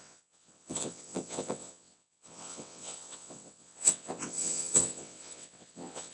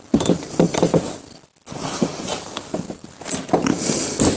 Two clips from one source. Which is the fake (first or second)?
first